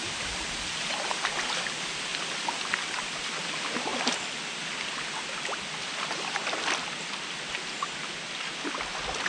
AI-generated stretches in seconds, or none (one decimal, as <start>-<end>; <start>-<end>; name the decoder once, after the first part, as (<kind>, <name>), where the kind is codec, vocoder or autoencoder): none